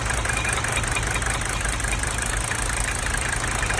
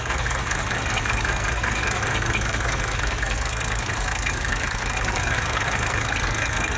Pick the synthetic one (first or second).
second